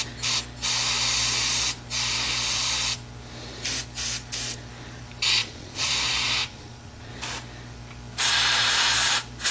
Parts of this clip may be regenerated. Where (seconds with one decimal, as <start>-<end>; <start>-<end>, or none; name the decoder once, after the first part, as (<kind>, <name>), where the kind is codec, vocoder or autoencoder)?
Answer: 5.4-5.9 (vocoder, Vocos); 6.4-7.1